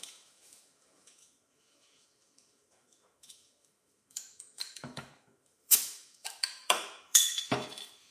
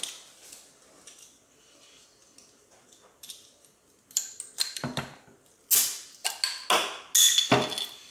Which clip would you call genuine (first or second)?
second